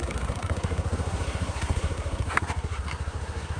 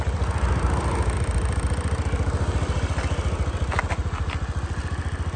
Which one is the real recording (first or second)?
second